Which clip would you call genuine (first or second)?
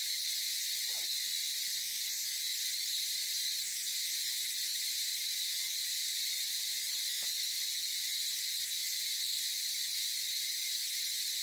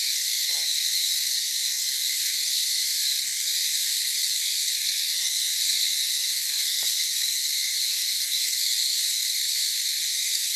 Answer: first